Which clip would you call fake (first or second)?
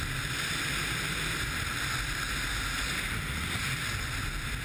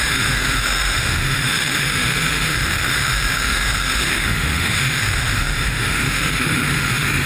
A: second